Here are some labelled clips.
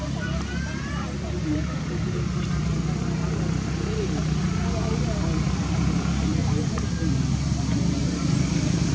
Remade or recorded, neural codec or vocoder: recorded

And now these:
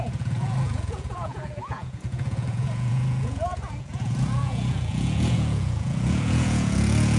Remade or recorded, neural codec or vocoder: remade, vocoder, Vocos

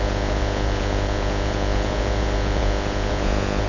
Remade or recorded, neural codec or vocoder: remade, vocoder, Vocos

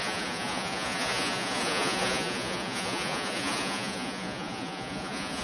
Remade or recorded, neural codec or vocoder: remade, vocoder, Vocos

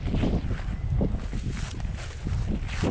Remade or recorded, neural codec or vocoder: recorded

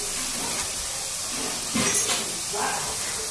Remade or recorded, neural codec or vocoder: recorded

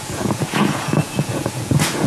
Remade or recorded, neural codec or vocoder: remade, vocoder, Vocos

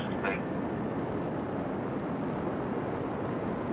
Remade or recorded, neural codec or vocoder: recorded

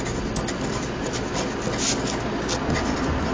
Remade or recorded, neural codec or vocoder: recorded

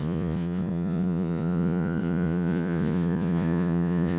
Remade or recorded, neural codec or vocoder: remade, vocoder, Vocos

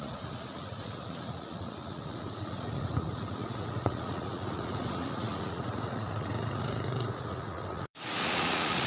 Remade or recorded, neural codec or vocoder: remade, vocoder, Vocos